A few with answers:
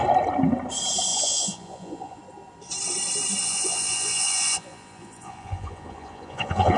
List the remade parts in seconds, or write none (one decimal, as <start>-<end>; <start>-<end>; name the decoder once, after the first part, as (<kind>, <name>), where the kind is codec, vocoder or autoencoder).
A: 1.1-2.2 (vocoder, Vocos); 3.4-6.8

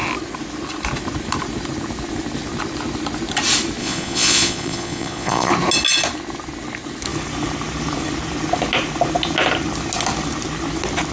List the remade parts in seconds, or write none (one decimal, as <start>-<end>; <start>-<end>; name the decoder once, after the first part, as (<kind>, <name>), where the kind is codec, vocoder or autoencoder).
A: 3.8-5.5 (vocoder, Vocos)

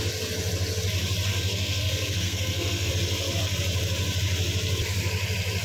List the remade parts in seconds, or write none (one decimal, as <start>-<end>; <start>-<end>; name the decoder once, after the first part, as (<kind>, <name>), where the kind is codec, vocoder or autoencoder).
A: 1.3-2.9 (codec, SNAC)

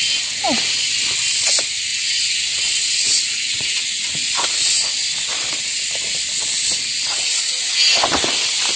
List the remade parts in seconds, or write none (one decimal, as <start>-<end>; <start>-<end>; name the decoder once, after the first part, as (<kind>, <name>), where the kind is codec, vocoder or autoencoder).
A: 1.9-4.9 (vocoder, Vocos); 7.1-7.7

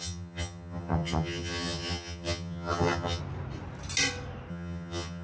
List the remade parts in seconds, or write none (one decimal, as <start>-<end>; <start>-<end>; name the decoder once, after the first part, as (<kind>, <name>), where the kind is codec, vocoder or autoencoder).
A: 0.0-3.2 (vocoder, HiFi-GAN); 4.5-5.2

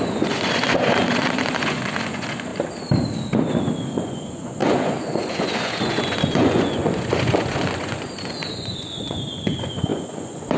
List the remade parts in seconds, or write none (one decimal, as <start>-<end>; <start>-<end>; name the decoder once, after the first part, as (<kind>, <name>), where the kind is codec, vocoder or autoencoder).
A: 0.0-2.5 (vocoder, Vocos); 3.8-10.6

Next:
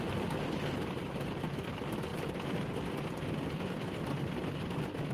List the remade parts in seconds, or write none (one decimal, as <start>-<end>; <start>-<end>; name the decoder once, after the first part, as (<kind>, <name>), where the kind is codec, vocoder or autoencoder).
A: 0.0-1.0 (vocoder, BigVGAN v2); 1.6-2.1; 4.5-5.1